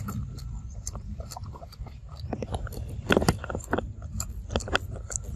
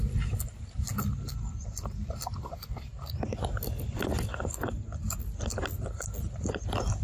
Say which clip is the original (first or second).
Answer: second